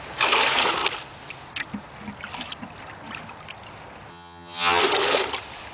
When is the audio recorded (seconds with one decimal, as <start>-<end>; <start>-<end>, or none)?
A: 0.0-4.1; 4.8-5.7

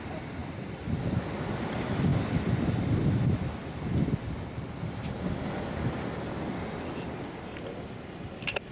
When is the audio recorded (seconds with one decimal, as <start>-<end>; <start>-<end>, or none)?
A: 0.0-8.7

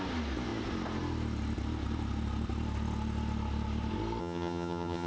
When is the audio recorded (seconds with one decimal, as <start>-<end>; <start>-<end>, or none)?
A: 0.0-4.2